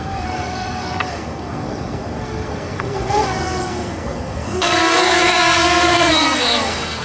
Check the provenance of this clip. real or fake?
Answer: fake